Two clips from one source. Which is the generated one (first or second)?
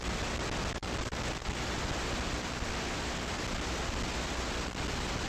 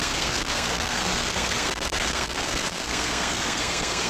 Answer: second